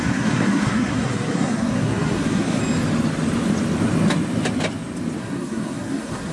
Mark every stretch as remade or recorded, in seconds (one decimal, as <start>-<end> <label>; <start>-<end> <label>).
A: 0.0-2.6 remade; 2.6-5.2 recorded; 5.2-6.3 remade